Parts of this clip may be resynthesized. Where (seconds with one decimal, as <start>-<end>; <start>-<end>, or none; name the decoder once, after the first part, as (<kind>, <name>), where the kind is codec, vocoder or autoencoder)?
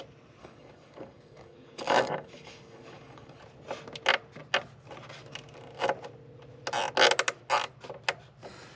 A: 0.4-3.4 (codec, DAC)